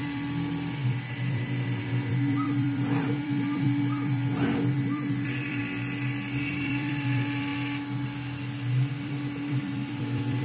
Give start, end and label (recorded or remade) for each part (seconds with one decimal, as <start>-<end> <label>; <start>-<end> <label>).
0.0-5.6 remade; 5.6-6.5 recorded; 6.5-7.5 remade; 7.5-8.9 recorded; 8.9-10.4 remade